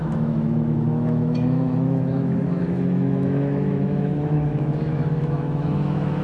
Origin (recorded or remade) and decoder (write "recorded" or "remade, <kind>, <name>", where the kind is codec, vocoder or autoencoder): remade, autoencoder, DAC-VAE